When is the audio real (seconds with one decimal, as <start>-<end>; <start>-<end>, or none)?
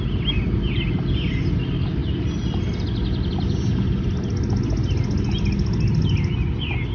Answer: 0.0-6.9